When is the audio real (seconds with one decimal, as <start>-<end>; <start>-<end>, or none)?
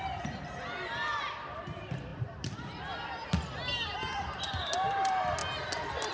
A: 0.0-6.1